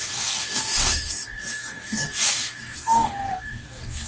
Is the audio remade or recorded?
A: remade